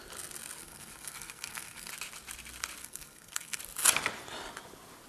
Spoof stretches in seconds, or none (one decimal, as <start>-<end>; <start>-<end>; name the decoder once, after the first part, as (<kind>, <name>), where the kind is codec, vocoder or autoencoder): 0.6-1.9 (codec, SNAC); 2.8-3.6